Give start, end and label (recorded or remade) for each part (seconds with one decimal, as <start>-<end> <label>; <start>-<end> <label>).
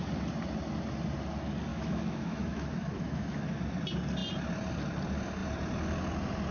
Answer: 0.0-1.7 recorded; 1.7-3.5 remade; 3.5-6.5 recorded